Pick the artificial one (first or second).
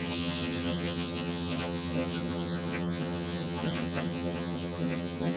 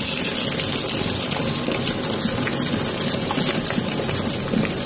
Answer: first